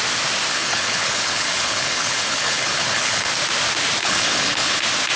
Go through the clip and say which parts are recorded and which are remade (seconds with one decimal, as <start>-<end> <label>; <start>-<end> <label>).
0.0-0.5 recorded; 0.5-3.3 remade; 3.3-4.0 recorded; 4.0-4.8 remade; 4.8-5.2 recorded